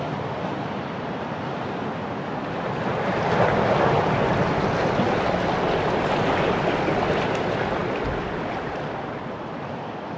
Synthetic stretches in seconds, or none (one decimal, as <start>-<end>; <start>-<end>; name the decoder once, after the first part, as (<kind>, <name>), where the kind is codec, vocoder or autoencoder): none

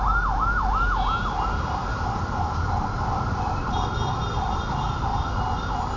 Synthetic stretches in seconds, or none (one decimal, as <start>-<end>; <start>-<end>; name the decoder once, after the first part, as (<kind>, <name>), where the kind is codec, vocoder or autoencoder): none

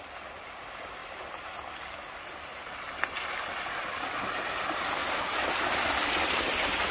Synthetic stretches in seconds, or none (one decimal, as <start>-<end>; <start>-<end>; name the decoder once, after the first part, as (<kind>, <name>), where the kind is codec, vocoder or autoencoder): none

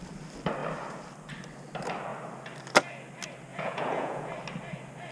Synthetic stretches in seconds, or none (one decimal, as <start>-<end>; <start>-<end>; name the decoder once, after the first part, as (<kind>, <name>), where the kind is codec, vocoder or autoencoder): 3.5-4.3 (vocoder, Vocos)